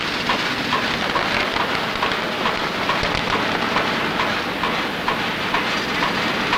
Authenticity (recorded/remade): recorded